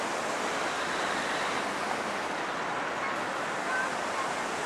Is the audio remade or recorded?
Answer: recorded